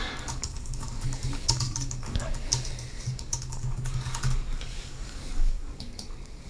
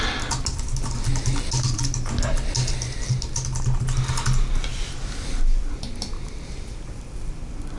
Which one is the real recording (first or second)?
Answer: second